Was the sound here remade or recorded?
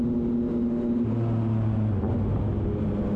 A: recorded